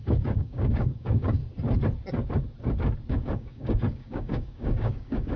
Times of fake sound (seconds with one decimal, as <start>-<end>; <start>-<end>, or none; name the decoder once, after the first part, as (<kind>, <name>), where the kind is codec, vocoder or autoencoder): 0.0-1.4 (codec, DAC); 3.1-5.4